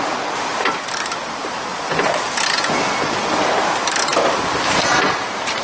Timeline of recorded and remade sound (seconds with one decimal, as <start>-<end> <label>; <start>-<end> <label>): 0.0-1.7 remade; 1.7-5.1 recorded; 5.1-5.6 remade